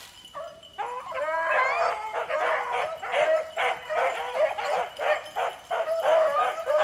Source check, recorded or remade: remade